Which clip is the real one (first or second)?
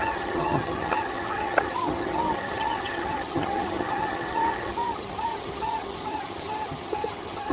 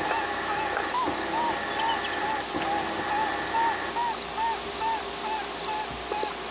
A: second